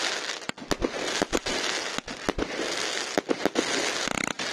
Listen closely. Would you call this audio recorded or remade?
recorded